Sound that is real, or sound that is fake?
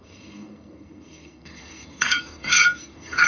fake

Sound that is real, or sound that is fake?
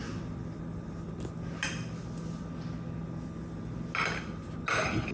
real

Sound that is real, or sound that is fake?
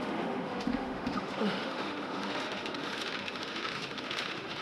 fake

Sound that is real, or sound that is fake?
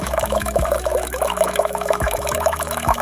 fake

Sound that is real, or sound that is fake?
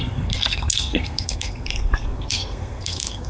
fake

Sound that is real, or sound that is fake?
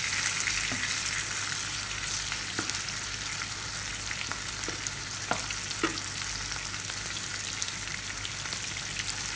real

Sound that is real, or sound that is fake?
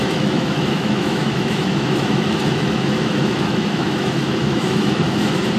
fake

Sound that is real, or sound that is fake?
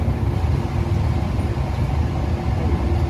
real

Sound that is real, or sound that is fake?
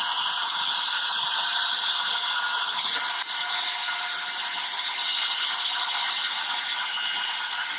real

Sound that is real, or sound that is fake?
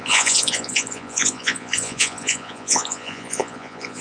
fake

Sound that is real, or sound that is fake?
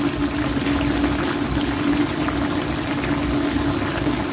real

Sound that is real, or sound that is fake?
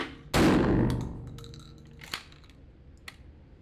real